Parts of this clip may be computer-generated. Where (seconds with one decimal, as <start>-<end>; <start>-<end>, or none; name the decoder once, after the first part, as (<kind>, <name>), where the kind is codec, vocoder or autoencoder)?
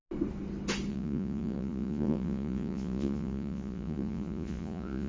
0.9-5.1 (vocoder, Vocos)